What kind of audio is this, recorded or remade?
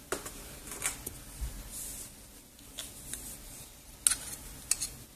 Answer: recorded